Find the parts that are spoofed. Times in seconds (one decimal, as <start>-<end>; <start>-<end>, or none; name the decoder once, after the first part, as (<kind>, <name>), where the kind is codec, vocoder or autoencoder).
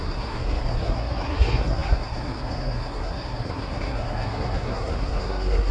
0.0-5.7 (codec, SNAC)